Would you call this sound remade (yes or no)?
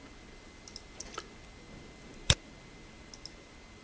no